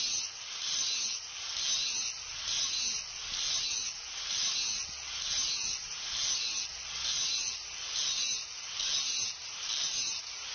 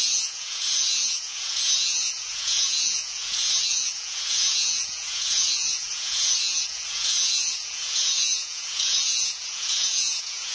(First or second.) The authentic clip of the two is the first